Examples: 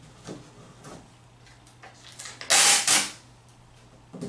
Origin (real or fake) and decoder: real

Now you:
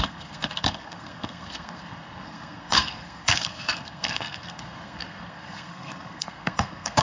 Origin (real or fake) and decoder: fake, codec, SNAC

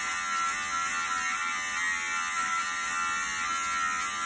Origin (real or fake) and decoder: real